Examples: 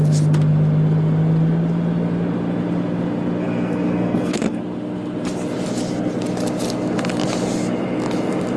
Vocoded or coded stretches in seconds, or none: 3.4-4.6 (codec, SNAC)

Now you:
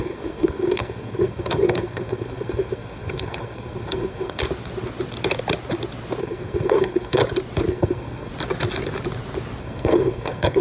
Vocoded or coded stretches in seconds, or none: 0.0-4.4 (codec, SNAC); 6.2-7.2; 7.7-8.3; 9.6-10.6

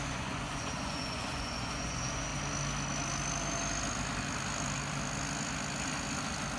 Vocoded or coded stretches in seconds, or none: 0.0-2.3 (vocoder, Vocos)

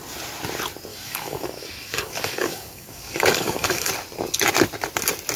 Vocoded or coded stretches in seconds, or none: 0.9-3.9 (codec, DAC)

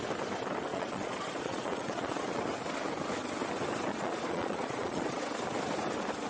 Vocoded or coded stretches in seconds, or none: 0.7-2.4 (vocoder, Vocos); 3.9-5.2